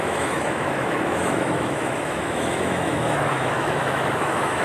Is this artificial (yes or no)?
yes